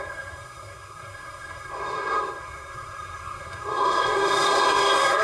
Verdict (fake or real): fake